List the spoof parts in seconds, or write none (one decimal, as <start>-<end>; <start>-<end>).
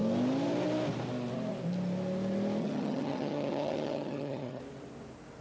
2.6-4.6